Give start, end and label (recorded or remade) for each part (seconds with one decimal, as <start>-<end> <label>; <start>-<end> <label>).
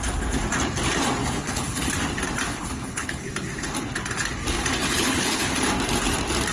0.0-1.2 recorded; 1.2-1.9 remade; 1.9-2.5 recorded; 2.5-3.3 remade; 3.3-4.8 recorded; 4.8-5.5 remade; 5.5-6.5 recorded